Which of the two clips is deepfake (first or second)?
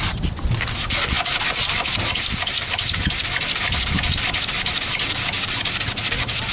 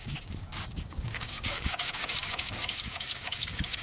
second